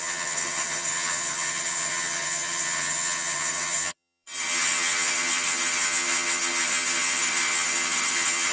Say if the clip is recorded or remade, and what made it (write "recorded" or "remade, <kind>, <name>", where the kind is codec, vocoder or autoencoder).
remade, vocoder, HiFi-GAN